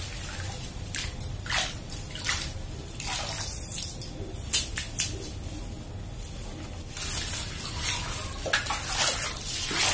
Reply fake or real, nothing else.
real